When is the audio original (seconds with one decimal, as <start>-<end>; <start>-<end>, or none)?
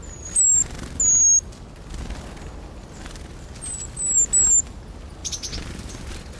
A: 0.0-6.4